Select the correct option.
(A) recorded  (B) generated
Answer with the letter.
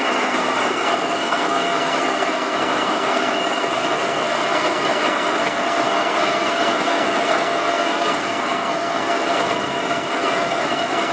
B